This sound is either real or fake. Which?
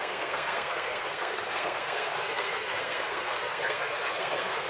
fake